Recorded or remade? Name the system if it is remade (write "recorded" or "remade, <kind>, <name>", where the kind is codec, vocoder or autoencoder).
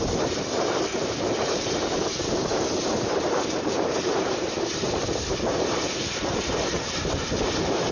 remade, vocoder, BigVGAN v2